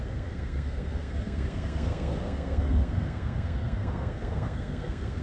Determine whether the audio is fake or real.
fake